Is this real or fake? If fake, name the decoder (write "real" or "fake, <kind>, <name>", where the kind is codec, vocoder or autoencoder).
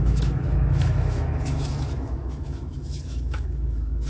fake, autoencoder, DAC-VAE